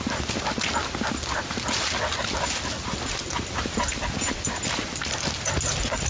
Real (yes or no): yes